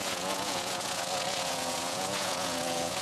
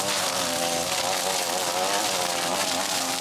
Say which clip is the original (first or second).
second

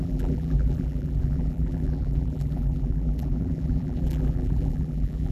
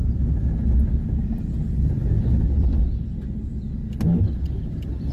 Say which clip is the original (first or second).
second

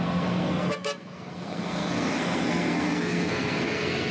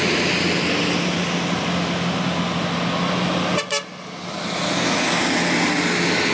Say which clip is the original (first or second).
second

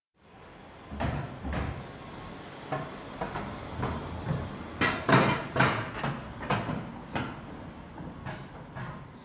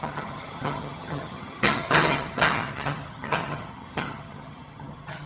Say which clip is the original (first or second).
first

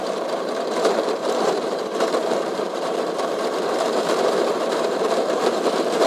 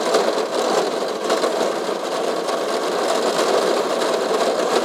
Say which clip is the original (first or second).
second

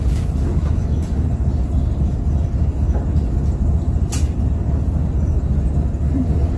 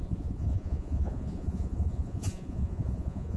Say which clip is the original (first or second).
first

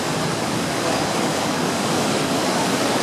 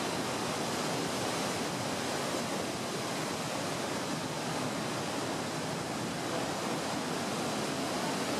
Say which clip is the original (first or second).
second